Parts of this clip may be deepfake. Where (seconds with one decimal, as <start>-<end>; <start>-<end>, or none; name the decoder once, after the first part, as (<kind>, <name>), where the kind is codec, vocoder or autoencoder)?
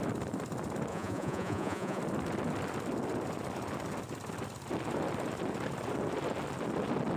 0.9-2.0 (vocoder, Vocos)